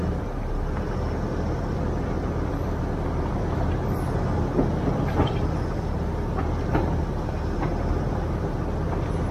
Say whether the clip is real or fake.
real